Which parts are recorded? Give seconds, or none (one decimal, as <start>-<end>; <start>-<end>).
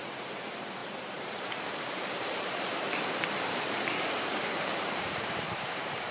none